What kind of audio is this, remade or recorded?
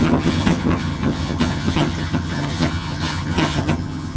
remade